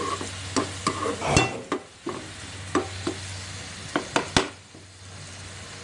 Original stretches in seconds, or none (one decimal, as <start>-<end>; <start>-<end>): 0.0-5.8